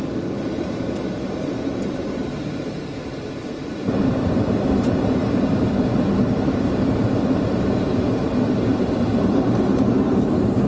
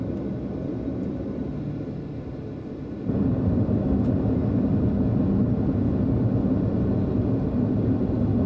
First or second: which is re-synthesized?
first